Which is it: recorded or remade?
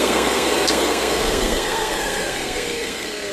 remade